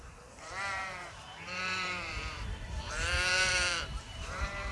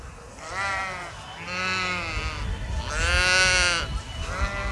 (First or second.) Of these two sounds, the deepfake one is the first